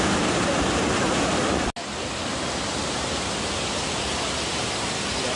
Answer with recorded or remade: recorded